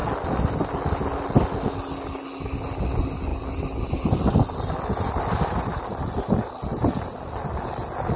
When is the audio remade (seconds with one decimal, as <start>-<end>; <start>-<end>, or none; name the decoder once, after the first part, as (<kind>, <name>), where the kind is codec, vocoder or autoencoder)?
none